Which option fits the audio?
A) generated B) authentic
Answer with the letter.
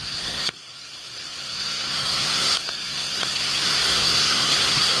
A